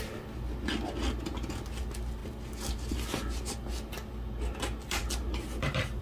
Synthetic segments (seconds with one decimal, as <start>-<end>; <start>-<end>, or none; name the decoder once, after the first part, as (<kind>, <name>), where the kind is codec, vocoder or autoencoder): none